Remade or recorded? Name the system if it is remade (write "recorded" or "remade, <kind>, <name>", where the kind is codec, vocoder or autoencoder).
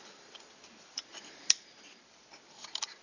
remade, vocoder, BigVGAN v2